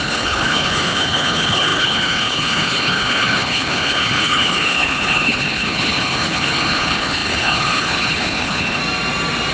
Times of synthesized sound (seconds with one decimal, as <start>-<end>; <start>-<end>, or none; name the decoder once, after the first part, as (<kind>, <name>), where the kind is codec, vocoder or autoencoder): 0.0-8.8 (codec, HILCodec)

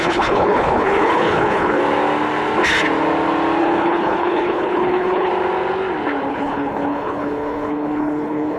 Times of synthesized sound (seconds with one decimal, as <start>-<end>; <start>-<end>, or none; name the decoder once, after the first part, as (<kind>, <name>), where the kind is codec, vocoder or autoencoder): 0.0-1.8 (codec, HILCodec); 3.6-5.3; 6.3-8.6

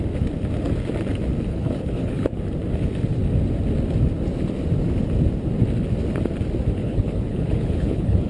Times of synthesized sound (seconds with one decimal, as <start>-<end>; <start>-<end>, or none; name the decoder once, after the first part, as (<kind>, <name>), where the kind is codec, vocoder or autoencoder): 1.5-2.4 (codec, HILCodec); 6.8-8.3

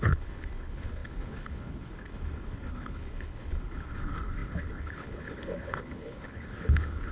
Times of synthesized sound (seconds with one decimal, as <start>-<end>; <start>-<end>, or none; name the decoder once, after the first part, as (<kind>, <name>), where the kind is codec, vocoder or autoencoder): 0.0-7.1 (codec, HILCodec)